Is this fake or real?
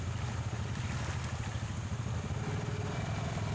real